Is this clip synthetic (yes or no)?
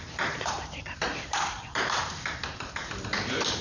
yes